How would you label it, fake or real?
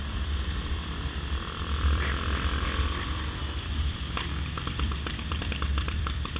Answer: fake